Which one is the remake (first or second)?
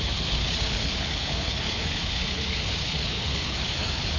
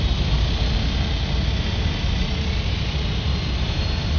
first